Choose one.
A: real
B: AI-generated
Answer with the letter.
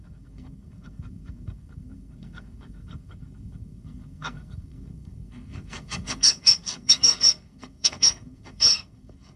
B